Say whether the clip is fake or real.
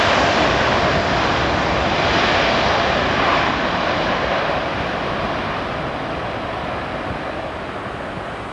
real